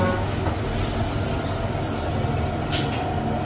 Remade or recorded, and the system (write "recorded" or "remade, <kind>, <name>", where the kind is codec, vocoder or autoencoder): recorded